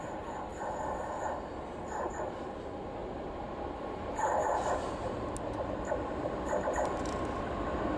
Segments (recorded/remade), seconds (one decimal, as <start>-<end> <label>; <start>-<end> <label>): 0.0-8.0 recorded